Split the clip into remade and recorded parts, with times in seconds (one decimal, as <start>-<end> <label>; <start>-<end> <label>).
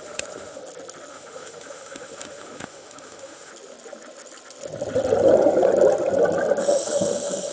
0.0-0.6 remade; 0.6-1.1 recorded; 1.1-3.5 remade; 3.5-6.6 recorded; 6.6-7.5 remade